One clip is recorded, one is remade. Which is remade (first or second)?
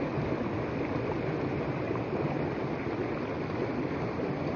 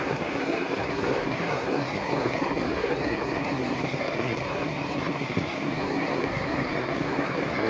second